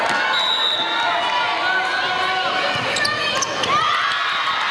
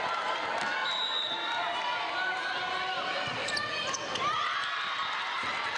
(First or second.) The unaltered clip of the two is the first